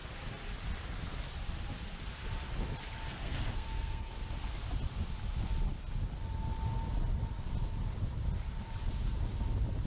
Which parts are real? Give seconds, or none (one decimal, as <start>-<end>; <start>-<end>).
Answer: 0.0-3.1; 4.1-9.9